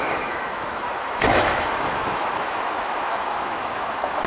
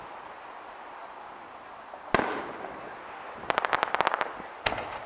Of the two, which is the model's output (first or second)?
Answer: first